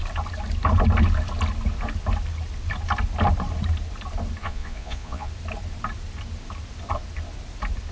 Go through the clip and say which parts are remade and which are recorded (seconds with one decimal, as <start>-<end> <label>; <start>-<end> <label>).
0.0-4.4 recorded; 4.4-5.3 remade; 5.3-7.9 recorded